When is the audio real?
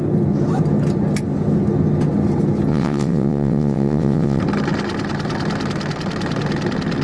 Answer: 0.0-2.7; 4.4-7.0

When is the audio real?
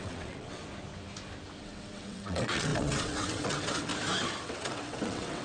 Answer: 0.6-1.6; 3.9-4.4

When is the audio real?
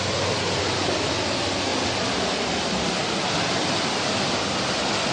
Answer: 0.0-5.1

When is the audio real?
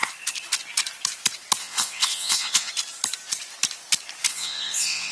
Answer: 0.0-1.6; 2.7-4.3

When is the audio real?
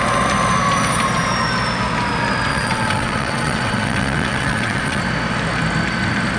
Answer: 0.0-2.5; 5.0-6.4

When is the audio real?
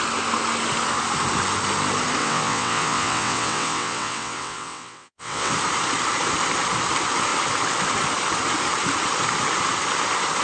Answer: 0.0-2.2; 5.5-10.4